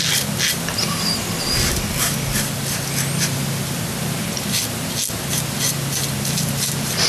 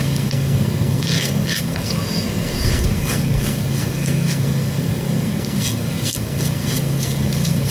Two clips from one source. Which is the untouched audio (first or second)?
first